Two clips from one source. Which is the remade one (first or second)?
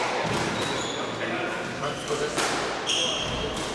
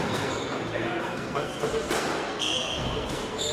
second